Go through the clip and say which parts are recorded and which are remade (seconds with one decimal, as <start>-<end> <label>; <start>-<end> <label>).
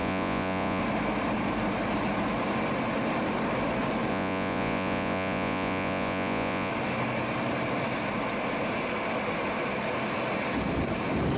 0.0-0.8 remade; 0.8-4.1 recorded; 4.1-6.7 remade; 6.7-11.4 recorded